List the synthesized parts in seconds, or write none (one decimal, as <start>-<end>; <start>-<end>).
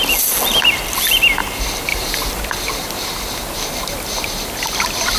1.9-2.4